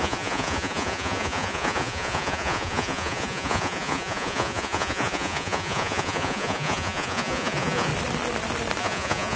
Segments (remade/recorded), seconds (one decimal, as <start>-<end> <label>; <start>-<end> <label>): 0.0-7.9 remade; 7.9-8.8 recorded; 8.8-9.4 remade